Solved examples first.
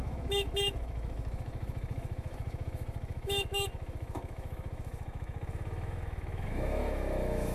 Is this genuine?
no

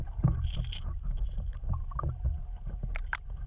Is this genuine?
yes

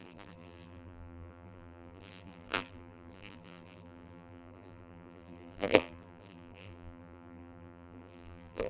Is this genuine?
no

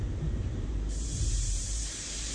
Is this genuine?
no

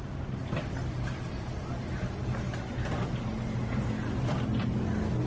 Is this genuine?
yes